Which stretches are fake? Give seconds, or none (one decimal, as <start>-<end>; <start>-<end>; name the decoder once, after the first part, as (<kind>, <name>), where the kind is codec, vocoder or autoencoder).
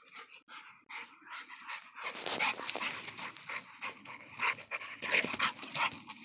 4.0-5.3 (codec, HILCodec)